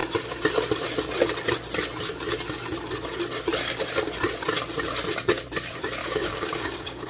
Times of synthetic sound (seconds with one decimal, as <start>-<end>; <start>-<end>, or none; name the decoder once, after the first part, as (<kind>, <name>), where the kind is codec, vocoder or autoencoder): 6.0-7.1 (codec, DAC)